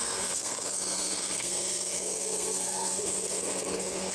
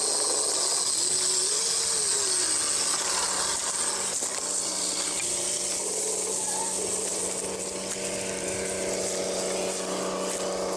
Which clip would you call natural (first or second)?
second